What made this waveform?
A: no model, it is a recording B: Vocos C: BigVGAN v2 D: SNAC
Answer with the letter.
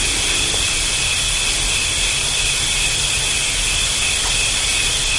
A